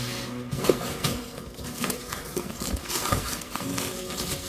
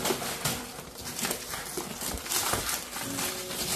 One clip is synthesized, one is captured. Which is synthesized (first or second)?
first